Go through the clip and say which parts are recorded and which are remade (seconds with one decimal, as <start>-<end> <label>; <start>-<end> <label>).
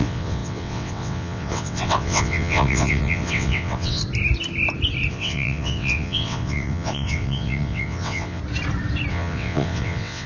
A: 0.0-4.0 remade; 4.0-5.1 recorded; 5.1-8.4 remade; 8.4-9.1 recorded; 9.1-10.3 remade